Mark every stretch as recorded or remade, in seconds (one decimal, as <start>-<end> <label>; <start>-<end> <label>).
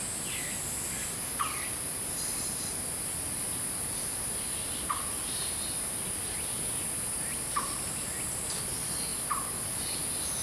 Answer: 0.0-10.4 recorded